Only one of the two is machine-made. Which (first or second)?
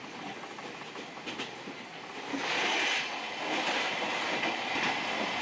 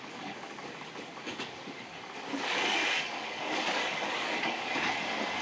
second